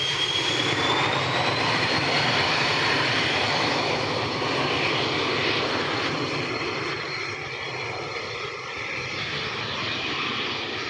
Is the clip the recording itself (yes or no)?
no